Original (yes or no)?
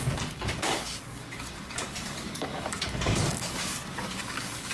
no